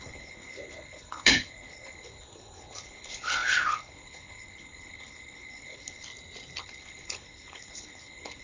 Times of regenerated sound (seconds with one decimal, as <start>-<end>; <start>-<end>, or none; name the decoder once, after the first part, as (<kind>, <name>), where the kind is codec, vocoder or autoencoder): 0.0-6.1 (codec, HILCodec); 6.6-8.4